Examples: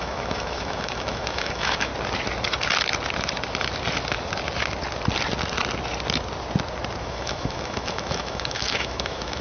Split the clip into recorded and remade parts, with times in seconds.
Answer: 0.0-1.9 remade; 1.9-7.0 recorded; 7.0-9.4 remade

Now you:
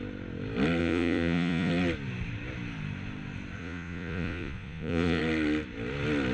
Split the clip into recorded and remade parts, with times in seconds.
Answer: 0.0-0.8 recorded; 0.8-1.7 remade; 1.7-3.6 recorded; 3.6-5.2 remade; 5.2-6.3 recorded

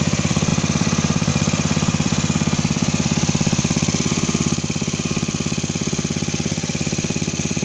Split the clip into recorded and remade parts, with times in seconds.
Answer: 0.0-7.6 remade

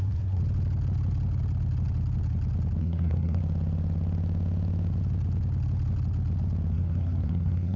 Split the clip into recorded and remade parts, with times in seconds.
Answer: 0.0-0.4 remade; 0.4-2.8 recorded; 2.8-3.4 remade; 3.4-6.7 recorded; 6.7-7.8 remade

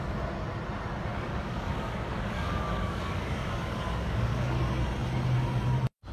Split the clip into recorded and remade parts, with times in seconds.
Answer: 0.0-1.1 recorded; 1.1-4.6 remade; 4.6-6.1 recorded

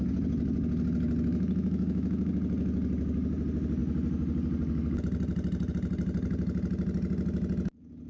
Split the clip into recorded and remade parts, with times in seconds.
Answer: 0.0-1.3 recorded; 1.3-2.3 remade; 2.3-8.1 recorded